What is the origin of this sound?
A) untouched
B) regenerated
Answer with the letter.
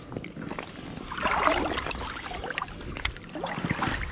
A